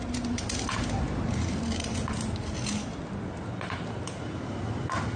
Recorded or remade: recorded